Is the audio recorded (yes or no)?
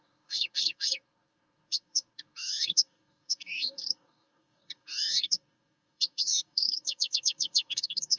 no